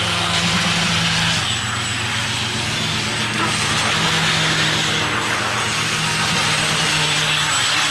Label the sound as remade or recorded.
recorded